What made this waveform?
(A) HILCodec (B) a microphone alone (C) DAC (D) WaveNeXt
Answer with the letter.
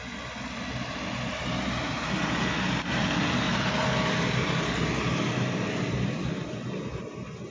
B